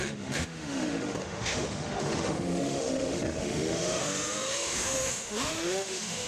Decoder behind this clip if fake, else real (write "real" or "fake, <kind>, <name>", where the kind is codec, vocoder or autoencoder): fake, autoencoder, DAC-VAE